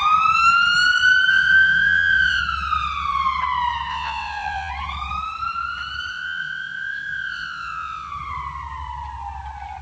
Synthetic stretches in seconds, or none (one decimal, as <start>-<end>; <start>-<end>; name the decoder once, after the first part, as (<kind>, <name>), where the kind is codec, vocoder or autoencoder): 1.3-2.4 (vocoder, WaveNeXt); 3.9-4.7; 6.1-8.1